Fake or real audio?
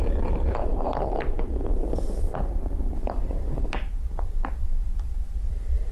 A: fake